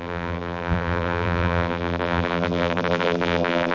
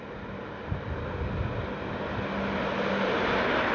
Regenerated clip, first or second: first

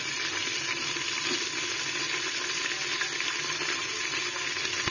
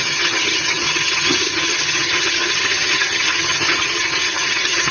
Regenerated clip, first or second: second